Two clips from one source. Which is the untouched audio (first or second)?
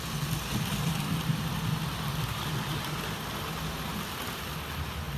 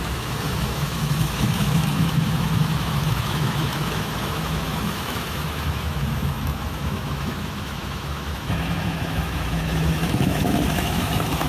first